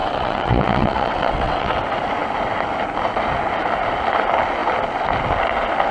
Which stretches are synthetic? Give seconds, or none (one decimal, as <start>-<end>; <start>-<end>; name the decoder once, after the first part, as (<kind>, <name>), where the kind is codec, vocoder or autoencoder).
0.0-1.8 (vocoder, WaveNeXt)